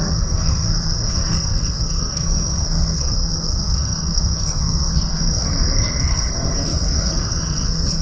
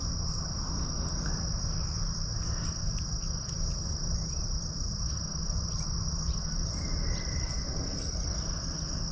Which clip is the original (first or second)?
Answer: second